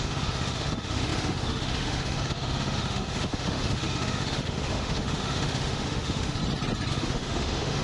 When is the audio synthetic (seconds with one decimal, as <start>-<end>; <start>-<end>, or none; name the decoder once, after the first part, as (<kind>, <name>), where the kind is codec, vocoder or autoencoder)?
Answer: 0.0-6.4 (autoencoder, DAC-VAE); 6.9-7.8

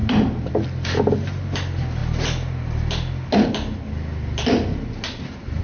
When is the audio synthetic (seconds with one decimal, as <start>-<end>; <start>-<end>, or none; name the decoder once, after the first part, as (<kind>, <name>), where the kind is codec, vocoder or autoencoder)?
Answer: none